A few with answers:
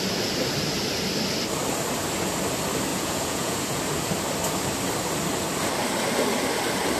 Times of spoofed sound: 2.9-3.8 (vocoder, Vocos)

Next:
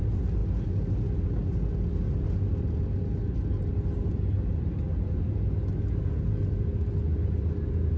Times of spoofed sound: none

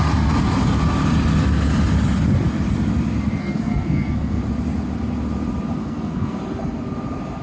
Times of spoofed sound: 3.4-4.4 (codec, SNAC); 5.8-6.4